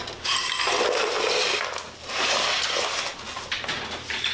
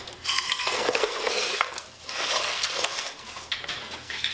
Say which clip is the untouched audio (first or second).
first